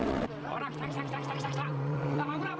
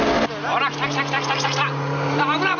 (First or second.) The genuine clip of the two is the second